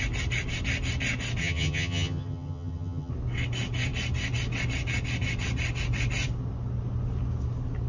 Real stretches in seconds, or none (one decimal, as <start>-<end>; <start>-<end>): 0.0-1.4; 3.1-7.9

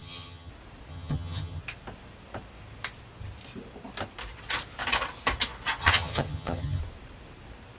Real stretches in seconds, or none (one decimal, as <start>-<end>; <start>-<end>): 0.5-0.9; 1.6-5.8; 6.8-7.8